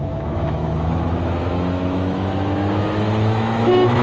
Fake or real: fake